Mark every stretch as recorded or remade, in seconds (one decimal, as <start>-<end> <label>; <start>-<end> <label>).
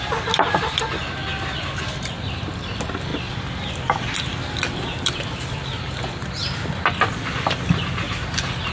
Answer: 0.0-3.1 recorded; 3.1-5.2 remade; 5.2-8.7 recorded